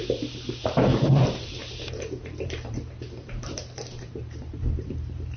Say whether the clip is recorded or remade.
remade